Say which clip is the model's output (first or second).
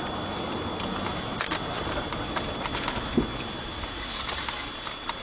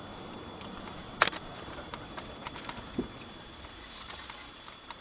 second